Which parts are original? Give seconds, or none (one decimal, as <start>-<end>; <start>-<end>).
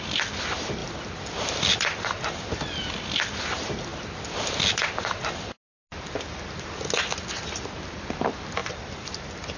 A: 0.0-0.8; 2.0-3.9; 4.5-8.6